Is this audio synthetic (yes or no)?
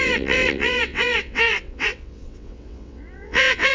yes